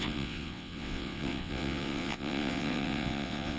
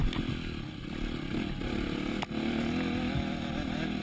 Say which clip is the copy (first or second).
first